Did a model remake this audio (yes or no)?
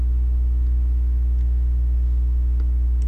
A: no